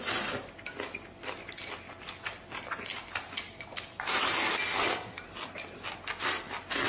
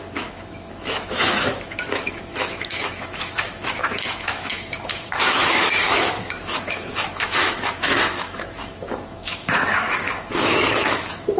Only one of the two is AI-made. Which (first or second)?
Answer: second